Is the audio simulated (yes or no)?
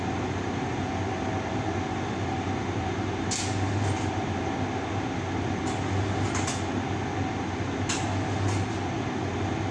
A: no